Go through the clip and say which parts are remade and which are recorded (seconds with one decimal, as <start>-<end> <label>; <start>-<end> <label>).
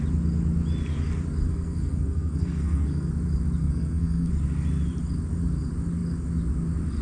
0.0-1.5 recorded; 1.5-3.1 remade; 3.1-3.6 recorded; 3.6-4.3 remade; 4.3-7.0 recorded